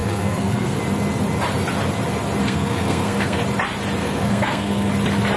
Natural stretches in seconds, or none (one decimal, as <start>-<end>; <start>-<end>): 0.8-2.4; 3.4-4.0; 4.9-5.4